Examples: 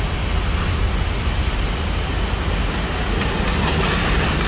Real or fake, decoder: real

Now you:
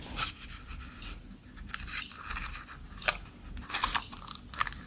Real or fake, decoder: fake, vocoder, BigVGAN v2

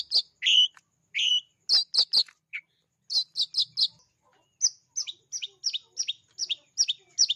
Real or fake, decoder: real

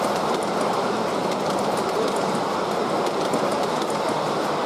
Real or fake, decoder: real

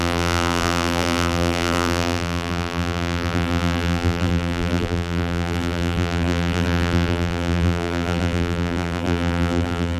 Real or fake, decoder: fake, vocoder, BigVGAN v2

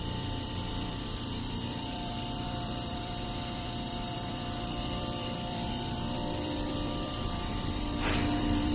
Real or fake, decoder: fake, vocoder, BigVGAN v2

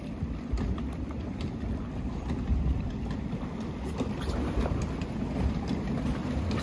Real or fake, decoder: real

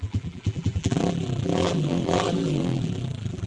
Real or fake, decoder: fake, vocoder, BigVGAN v2